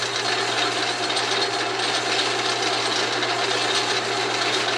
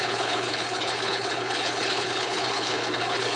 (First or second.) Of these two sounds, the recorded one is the first